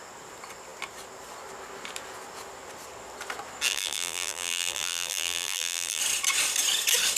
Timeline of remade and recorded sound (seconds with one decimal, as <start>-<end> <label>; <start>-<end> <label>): 0.0-3.7 recorded; 3.7-6.0 remade; 6.0-7.2 recorded

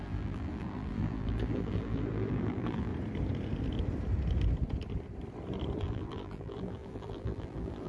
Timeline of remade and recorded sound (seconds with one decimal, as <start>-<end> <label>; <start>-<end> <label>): 0.0-2.9 remade; 2.9-5.8 recorded; 5.8-7.9 remade